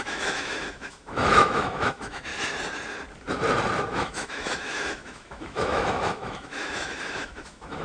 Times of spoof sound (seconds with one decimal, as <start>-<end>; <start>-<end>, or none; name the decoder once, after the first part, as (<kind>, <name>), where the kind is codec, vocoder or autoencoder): 0.0-2.3 (autoencoder, DAC-VAE); 3.9-7.8